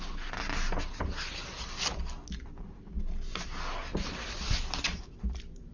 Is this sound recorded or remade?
recorded